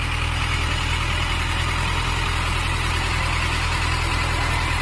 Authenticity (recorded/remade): recorded